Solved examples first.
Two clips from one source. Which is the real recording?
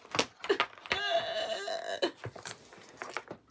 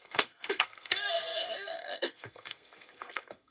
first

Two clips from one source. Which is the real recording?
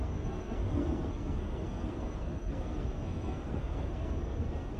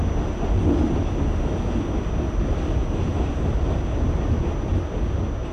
second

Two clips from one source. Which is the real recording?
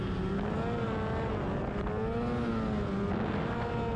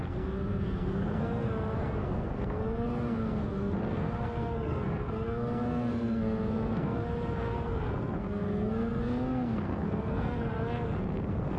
first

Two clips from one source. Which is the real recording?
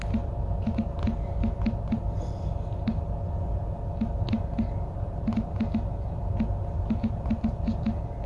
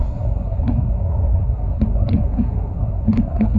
first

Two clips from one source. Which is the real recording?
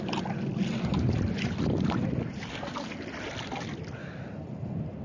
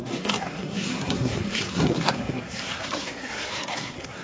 first